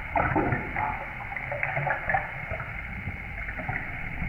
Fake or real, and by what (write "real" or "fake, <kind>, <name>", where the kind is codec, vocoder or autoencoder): real